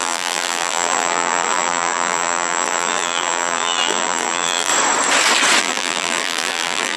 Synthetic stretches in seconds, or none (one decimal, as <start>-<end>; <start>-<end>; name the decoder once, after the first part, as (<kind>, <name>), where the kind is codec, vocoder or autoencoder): 0.0-4.7 (vocoder, BigVGAN v2); 5.6-7.0